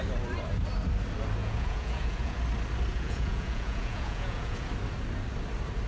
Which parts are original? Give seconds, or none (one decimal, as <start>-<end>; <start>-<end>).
0.0-1.4; 2.4-2.9; 4.7-5.9